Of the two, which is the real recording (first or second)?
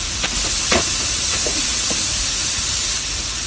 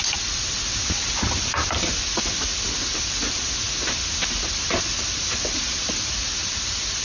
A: second